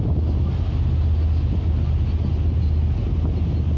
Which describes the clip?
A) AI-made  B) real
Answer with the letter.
B